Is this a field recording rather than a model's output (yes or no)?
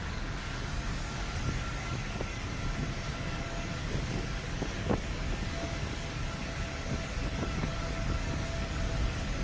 no